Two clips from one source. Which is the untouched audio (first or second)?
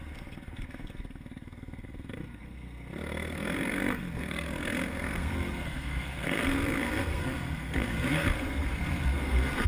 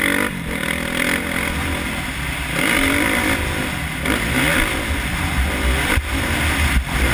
second